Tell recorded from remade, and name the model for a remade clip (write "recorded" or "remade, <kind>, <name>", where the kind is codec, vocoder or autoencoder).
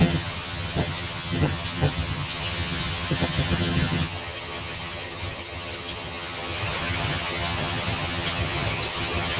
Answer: remade, vocoder, HiFi-GAN